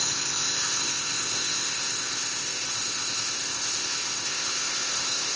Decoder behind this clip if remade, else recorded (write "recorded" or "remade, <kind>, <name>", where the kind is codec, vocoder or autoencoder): remade, codec, ZipCodec